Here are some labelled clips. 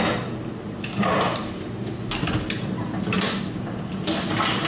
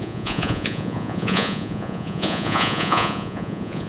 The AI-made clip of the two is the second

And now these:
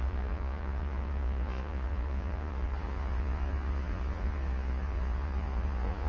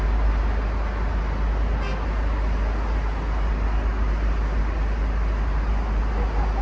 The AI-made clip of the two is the first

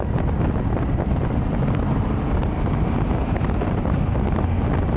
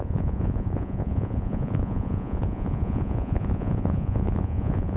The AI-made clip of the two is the second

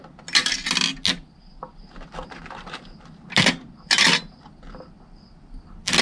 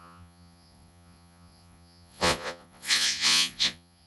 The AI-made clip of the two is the second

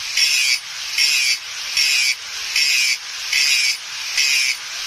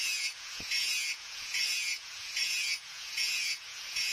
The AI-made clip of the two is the second